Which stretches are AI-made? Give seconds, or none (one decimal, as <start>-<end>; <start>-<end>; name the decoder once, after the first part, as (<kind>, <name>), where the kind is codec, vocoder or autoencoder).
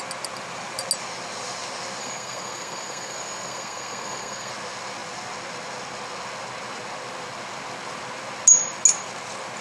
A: 2.0-4.5 (codec, SNAC)